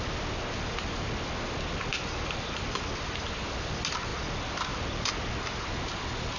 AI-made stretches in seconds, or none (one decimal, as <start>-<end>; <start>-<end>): 1.9-2.8; 4.1-5.1